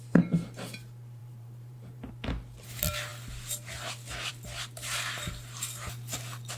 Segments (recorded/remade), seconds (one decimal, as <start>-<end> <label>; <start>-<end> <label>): 0.0-1.2 recorded; 1.2-2.1 remade; 2.1-6.6 recorded